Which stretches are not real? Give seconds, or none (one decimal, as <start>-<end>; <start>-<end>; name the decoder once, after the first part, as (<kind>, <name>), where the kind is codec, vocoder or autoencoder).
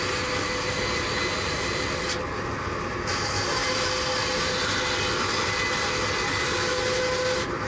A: none